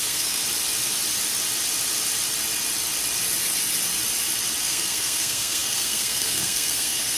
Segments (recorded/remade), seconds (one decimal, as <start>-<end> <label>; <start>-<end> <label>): 0.0-0.4 remade; 0.4-4.6 recorded; 4.6-7.2 remade